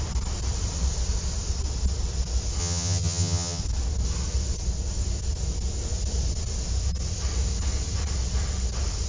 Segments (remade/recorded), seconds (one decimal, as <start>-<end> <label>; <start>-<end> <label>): 0.0-2.6 recorded; 2.6-3.6 remade; 3.6-9.1 recorded